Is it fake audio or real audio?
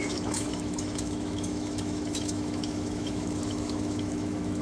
fake